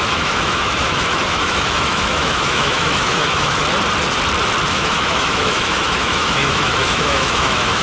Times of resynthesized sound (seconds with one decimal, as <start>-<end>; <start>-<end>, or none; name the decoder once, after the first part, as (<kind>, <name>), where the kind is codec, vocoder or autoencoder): 0.0-3.6 (autoencoder, DAC-VAE); 4.7-7.8

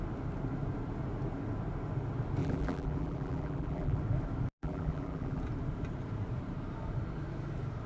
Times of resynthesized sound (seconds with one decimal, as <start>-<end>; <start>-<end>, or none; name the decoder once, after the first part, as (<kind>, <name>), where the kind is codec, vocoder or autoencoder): 2.4-4.0 (vocoder, BigVGAN v2); 4.6-5.4

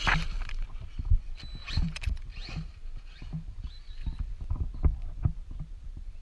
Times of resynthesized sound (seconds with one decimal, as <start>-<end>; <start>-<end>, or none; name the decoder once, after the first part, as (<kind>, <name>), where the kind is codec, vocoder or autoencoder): 1.6-2.3 (vocoder, Vocos)

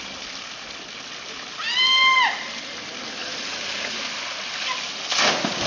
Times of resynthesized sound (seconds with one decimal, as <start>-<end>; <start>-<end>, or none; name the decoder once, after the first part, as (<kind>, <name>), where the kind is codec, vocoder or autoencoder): none

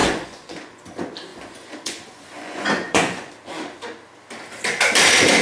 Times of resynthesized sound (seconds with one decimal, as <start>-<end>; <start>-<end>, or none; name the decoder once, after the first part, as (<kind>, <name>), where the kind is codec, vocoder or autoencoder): 0.0-0.8 (vocoder, Vocos); 1.3-3.3

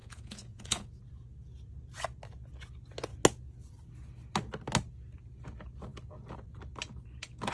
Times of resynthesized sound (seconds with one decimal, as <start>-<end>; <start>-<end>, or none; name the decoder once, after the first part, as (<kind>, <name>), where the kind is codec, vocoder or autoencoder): 0.0-0.9 (vocoder, Vocos)

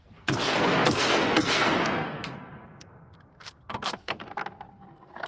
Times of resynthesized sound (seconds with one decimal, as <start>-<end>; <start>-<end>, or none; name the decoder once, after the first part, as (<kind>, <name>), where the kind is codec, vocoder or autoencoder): 0.0-4.2 (codec, SNAC); 4.7-5.3